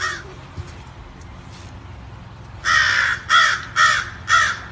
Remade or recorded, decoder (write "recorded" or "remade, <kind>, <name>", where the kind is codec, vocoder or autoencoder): recorded